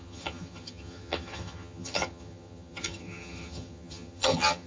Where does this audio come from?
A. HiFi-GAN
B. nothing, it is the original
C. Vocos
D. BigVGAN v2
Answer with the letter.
A